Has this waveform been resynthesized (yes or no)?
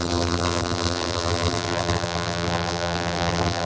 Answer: yes